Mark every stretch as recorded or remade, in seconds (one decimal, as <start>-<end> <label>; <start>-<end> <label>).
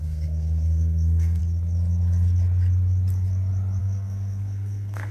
0.0-1.4 remade; 1.4-3.8 recorded; 3.8-5.1 remade